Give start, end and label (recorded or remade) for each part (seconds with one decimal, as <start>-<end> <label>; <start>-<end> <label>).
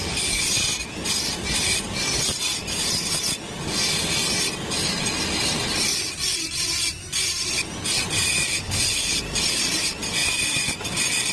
0.0-8.5 recorded; 8.5-9.2 remade; 9.2-11.3 recorded